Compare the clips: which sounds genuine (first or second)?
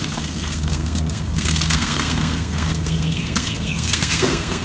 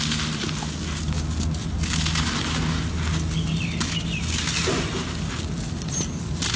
second